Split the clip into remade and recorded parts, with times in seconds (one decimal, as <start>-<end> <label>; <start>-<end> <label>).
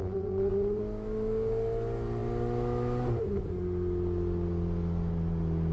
0.0-0.8 remade; 0.8-5.7 recorded